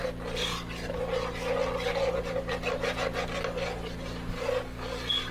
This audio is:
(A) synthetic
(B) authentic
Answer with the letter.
B